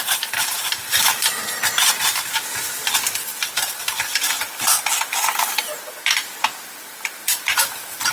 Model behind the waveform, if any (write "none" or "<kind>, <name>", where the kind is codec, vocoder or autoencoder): vocoder, BigVGAN v2